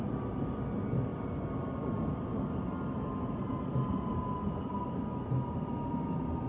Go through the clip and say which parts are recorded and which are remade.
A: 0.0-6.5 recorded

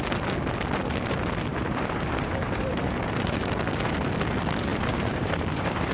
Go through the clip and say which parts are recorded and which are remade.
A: 0.0-1.5 recorded; 1.5-3.4 remade; 3.4-4.7 recorded; 4.7-5.9 remade

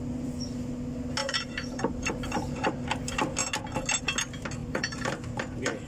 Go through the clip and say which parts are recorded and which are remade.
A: 0.0-1.2 recorded; 1.2-2.7 remade; 2.7-4.6 recorded; 4.6-5.9 remade

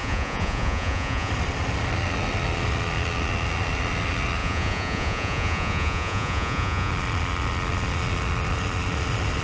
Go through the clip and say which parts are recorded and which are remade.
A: 0.0-1.3 remade; 1.3-4.4 recorded; 4.4-6.9 remade; 6.9-9.4 recorded

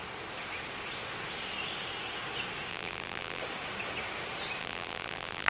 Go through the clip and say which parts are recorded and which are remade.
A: 0.0-2.7 recorded; 2.7-3.4 remade; 3.4-4.6 recorded; 4.6-5.5 remade

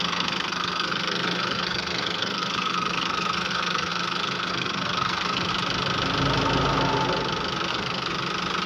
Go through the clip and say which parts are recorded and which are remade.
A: 0.0-5.5 remade; 5.5-7.7 recorded; 7.7-8.1 remade; 8.1-8.7 recorded